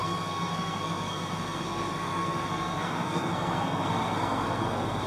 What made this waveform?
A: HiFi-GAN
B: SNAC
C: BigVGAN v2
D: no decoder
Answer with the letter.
B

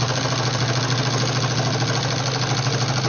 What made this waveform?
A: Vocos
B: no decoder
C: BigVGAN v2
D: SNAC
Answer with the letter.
B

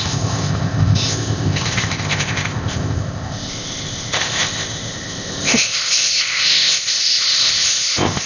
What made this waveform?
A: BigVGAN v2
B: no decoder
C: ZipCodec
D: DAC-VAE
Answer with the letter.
C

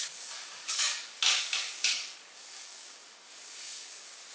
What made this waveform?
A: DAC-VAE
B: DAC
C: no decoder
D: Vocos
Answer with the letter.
B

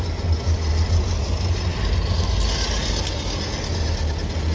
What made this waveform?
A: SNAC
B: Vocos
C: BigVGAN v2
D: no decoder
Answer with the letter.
D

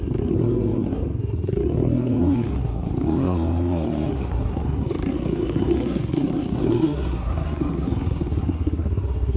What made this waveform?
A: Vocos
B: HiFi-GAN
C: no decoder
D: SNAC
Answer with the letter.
D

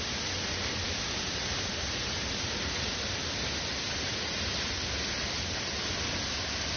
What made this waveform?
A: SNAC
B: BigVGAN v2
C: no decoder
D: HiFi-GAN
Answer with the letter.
C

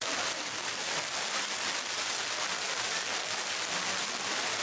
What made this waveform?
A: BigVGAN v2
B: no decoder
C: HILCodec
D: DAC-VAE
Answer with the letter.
B